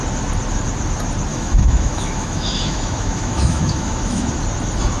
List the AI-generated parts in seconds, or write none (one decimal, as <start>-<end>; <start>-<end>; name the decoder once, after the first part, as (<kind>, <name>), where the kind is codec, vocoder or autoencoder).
1.3-4.3 (autoencoder, DAC-VAE)